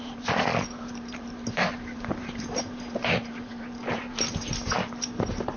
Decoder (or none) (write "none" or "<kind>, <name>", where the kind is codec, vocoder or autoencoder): vocoder, BigVGAN v2